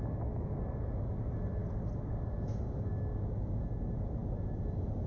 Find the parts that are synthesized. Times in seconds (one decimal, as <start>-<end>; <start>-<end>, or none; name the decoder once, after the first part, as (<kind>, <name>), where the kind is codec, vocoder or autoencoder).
4.2-5.1 (vocoder, BigVGAN v2)